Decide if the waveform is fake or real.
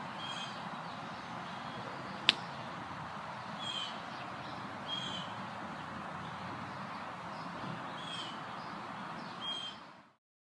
real